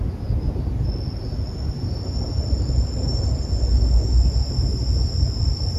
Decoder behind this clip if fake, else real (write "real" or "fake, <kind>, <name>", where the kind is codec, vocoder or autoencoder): real